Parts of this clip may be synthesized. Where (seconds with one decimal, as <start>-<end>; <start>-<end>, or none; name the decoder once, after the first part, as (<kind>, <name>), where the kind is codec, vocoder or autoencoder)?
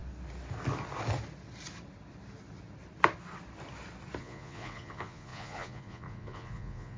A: 4.2-7.0 (vocoder, Vocos)